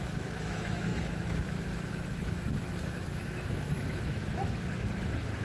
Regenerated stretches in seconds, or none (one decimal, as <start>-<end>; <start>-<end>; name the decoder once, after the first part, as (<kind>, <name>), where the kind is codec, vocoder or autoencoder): 0.0-5.4 (autoencoder, DAC-VAE)